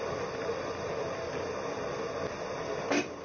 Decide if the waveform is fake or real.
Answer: real